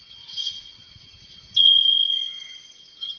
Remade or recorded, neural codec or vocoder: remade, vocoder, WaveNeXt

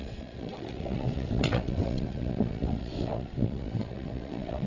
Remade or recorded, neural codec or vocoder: remade, vocoder, WaveNeXt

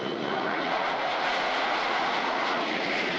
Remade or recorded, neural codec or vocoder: remade, vocoder, Vocos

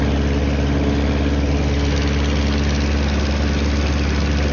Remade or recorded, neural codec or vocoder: recorded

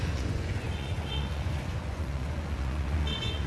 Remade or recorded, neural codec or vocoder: remade, vocoder, Vocos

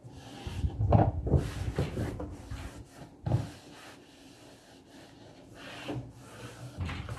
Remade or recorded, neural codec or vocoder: recorded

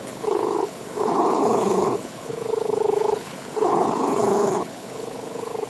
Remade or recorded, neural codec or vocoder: remade, codec, HILCodec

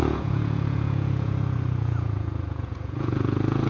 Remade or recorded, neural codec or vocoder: remade, vocoder, Vocos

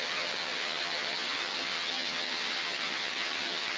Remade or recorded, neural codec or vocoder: remade, vocoder, HiFi-GAN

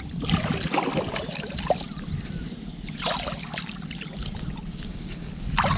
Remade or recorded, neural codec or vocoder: recorded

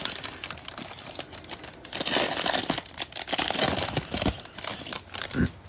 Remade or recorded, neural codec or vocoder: recorded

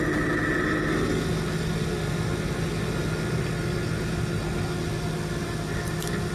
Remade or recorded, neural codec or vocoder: recorded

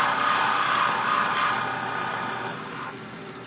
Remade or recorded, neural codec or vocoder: recorded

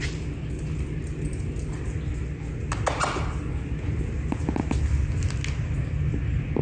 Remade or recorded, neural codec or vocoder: recorded